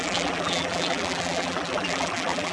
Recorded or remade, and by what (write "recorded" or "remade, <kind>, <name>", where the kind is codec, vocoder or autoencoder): remade, vocoder, BigVGAN v2